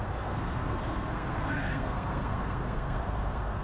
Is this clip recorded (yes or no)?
no